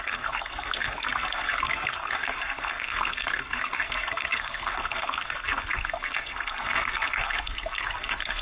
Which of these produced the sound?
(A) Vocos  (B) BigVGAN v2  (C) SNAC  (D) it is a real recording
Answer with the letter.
C